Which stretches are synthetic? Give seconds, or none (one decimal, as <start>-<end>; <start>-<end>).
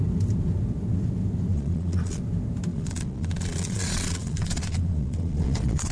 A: 1.5-2.2; 2.7-5.9